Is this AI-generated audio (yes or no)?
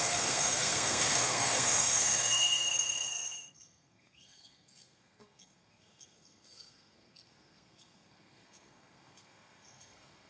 yes